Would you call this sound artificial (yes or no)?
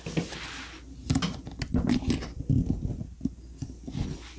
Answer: no